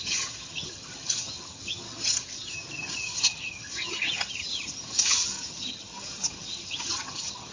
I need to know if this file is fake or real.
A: fake